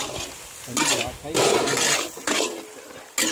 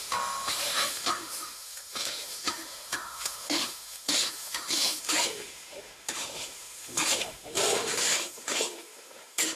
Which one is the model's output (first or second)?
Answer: second